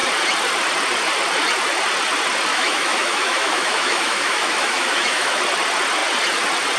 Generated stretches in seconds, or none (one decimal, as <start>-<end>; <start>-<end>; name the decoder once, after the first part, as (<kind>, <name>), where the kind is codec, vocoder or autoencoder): 2.5-5.4 (autoencoder, DAC-VAE)

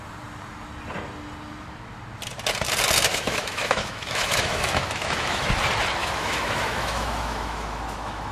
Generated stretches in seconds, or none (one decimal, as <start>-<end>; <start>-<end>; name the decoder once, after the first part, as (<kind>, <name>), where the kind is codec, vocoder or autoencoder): 3.1-5.5 (autoencoder, DAC-VAE); 6.0-8.3

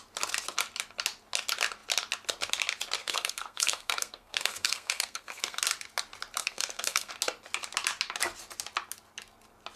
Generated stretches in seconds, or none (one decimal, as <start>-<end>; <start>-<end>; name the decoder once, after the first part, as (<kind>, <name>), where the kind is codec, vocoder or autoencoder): 3.0-5.6 (codec, SNAC); 6.4-7.1